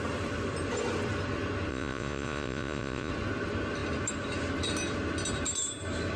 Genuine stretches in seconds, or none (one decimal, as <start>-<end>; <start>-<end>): 0.0-1.7; 3.1-6.2